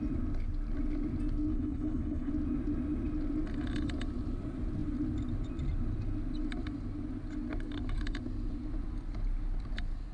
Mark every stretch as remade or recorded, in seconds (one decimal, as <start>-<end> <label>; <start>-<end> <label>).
0.0-1.5 recorded; 1.5-2.3 remade; 2.3-10.1 recorded